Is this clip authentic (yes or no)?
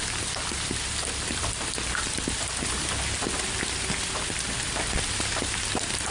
yes